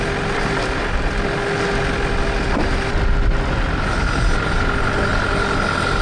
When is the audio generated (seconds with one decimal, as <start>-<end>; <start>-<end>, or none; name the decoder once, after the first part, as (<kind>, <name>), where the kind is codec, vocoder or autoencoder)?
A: none

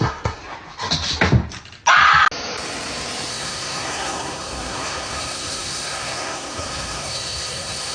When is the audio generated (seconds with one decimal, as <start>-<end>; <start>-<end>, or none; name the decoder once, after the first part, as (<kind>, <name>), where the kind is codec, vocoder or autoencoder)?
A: 0.0-0.4 (codec, SNAC); 3.3-7.9

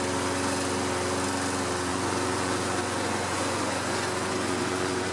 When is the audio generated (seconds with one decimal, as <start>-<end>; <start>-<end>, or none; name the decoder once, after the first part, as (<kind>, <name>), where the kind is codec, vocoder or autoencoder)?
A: 1.9-5.1 (vocoder, Vocos)

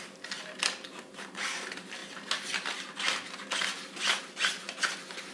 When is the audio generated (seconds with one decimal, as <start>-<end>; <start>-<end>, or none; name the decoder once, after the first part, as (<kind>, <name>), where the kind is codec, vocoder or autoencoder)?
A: none

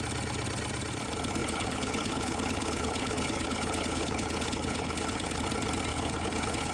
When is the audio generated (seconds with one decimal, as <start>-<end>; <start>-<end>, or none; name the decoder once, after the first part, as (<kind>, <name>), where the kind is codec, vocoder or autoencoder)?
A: 1.4-5.4 (codec, HILCodec); 5.9-6.7

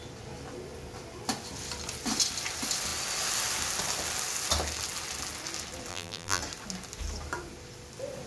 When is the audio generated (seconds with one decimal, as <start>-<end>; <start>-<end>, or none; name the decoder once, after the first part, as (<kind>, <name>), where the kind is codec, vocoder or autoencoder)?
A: 5.9-6.4 (vocoder, BigVGAN v2)

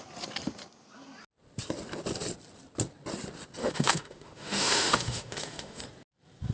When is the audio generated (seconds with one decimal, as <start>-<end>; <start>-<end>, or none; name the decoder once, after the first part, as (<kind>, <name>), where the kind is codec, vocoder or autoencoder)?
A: 3.6-5.8 (autoencoder, DAC-VAE)

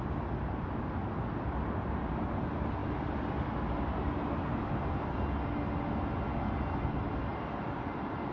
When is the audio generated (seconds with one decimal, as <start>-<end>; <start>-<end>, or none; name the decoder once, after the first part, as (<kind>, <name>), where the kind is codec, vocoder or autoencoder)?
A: 7.3-8.3 (vocoder, BigVGAN v2)